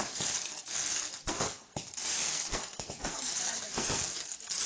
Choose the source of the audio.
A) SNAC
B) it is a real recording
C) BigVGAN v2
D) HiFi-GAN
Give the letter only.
A